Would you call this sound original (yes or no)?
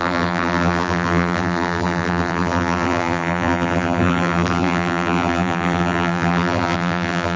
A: no